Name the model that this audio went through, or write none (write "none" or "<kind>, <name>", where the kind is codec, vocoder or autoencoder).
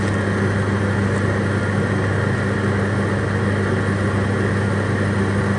none